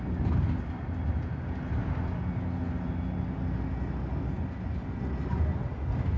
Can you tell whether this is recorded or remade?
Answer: recorded